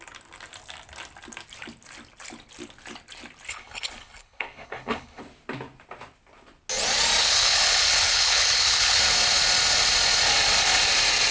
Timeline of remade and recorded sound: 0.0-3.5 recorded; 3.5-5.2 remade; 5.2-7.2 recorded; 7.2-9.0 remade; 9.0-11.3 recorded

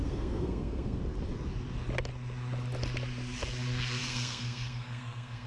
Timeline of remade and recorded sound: 0.0-1.0 remade; 1.0-4.0 recorded; 4.0-5.5 remade

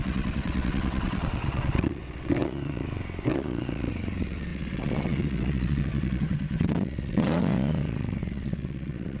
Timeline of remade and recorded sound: 0.0-9.2 remade

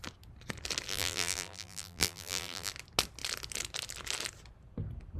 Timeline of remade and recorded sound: 0.0-0.9 recorded; 0.9-2.7 remade; 2.7-5.2 recorded

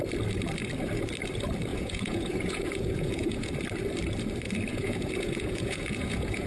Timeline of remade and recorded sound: 0.0-1.7 recorded; 1.7-3.5 remade; 3.5-4.7 recorded; 4.7-6.5 remade